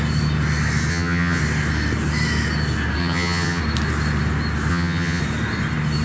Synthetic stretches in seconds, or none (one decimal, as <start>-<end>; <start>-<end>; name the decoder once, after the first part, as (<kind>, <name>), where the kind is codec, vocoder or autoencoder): 0.9-1.4 (vocoder, HiFi-GAN); 3.0-3.6; 4.7-5.2